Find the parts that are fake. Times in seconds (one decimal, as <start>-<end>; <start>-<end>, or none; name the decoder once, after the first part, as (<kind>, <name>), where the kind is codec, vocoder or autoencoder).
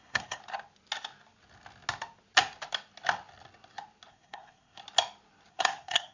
0.0-0.4 (codec, SNAC); 4.1-4.8; 5.5-6.1